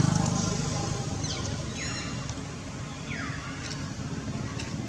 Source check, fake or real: real